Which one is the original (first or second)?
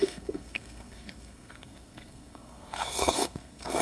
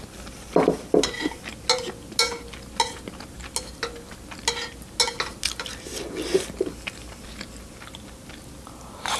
second